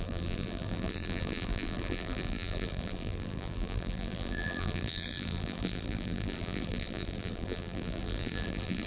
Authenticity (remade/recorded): remade